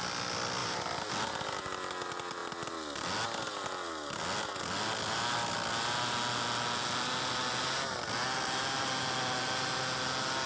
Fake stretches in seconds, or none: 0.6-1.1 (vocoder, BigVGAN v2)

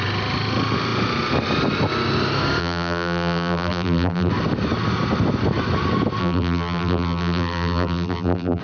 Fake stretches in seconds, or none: 2.6-4.3 (vocoder, BigVGAN v2); 6.2-8.6

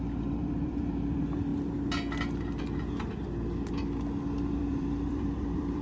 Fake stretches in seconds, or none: 0.0-1.5 (vocoder, BigVGAN v2); 4.5-5.8

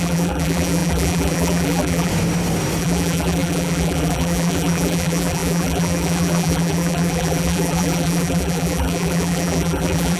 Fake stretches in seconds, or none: 0.0-2.1 (vocoder, BigVGAN v2); 2.8-10.2

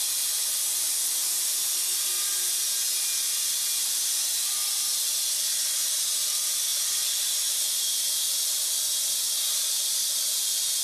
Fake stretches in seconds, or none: none

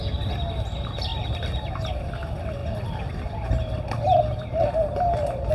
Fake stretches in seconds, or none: 1.1-1.7 (vocoder, BigVGAN v2); 2.6-5.5

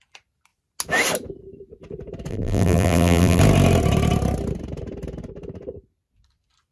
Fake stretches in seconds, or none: 2.3-3.4 (vocoder, BigVGAN v2)

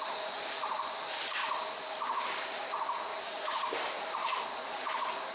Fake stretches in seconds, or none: 3.1-3.7 (vocoder, BigVGAN v2)